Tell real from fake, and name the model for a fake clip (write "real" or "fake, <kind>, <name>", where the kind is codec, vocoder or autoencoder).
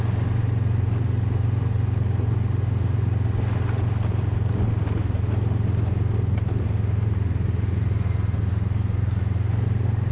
real